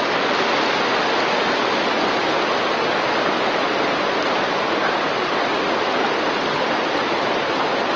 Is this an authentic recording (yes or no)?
yes